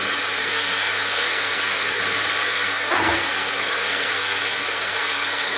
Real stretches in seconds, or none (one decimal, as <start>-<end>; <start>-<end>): 0.0-0.4; 2.0-2.4